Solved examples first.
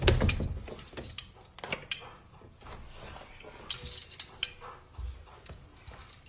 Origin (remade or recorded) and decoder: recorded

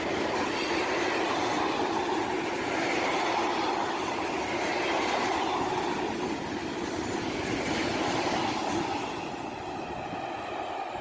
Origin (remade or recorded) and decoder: recorded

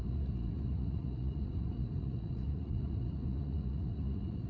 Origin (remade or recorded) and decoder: remade, vocoder, Vocos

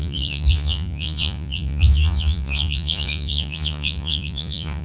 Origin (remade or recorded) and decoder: remade, vocoder, Vocos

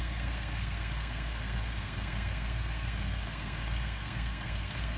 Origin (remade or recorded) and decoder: remade, codec, SNAC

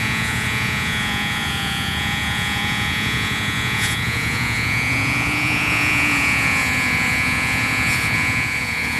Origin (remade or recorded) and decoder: remade, vocoder, Vocos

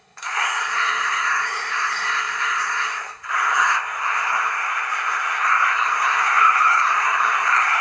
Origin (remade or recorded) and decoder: remade, codec, SNAC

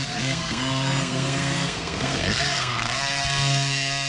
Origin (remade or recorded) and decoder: remade, codec, SNAC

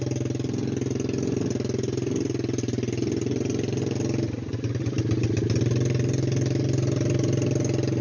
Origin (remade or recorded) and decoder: recorded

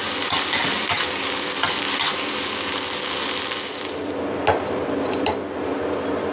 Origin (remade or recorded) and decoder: recorded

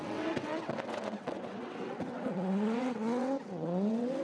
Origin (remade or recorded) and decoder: remade, vocoder, WaveNeXt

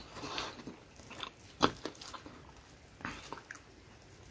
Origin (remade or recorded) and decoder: recorded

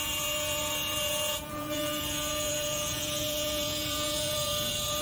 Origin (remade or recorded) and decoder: remade, vocoder, Vocos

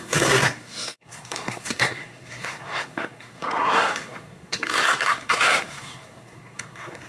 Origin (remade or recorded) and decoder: remade, codec, SNAC